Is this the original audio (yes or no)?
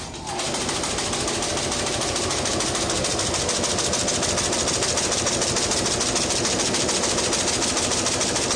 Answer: yes